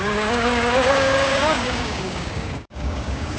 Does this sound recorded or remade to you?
remade